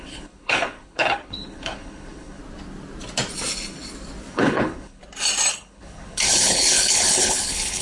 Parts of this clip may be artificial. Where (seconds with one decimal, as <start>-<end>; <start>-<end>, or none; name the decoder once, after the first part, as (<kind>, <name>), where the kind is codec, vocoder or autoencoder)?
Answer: 0.0-2.4 (codec, HILCodec); 4.3-5.0; 5.5-7.8